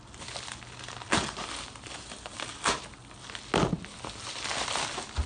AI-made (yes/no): no